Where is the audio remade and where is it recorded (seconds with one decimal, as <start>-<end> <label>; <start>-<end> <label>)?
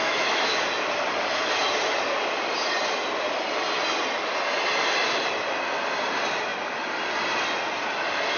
0.0-0.6 remade; 0.6-8.4 recorded